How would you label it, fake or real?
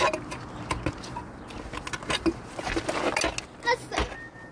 real